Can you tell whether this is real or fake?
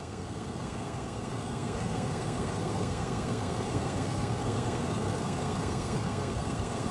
fake